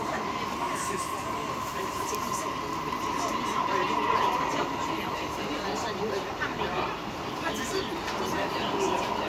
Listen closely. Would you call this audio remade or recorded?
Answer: recorded